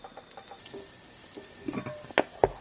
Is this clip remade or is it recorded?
recorded